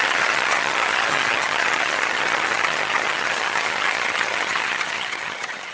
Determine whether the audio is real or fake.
fake